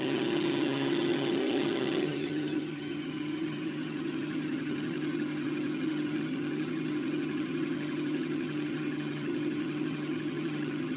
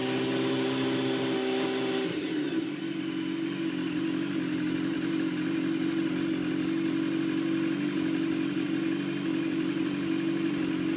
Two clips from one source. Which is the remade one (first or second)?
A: first